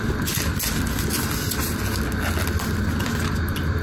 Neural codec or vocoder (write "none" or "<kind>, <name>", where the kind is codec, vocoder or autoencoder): none